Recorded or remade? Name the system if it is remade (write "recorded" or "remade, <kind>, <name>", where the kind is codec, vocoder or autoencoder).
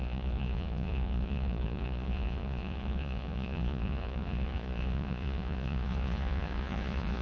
remade, vocoder, Vocos